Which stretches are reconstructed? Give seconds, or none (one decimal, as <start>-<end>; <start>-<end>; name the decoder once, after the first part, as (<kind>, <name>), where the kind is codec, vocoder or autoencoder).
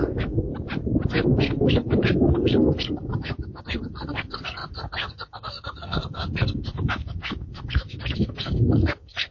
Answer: 0.0-0.5 (codec, SNAC); 1.1-9.3